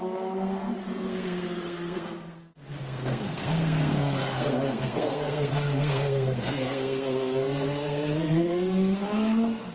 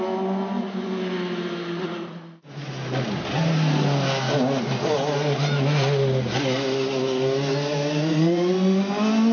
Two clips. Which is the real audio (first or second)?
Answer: second